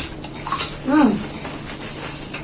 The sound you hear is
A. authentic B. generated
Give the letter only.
A